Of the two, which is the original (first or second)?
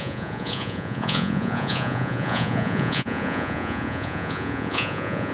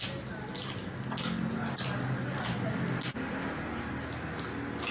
second